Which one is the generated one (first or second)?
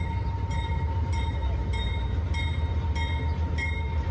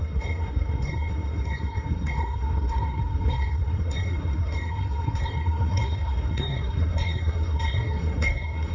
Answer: second